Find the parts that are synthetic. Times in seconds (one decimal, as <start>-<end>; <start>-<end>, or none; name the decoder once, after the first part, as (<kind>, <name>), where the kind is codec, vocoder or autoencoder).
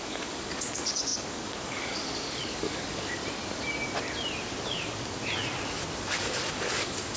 0.0-3.2 (codec, DAC); 4.7-5.2; 6.0-7.2